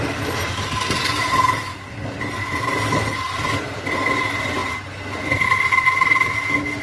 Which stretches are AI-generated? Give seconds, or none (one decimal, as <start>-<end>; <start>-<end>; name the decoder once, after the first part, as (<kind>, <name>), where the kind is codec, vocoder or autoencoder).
none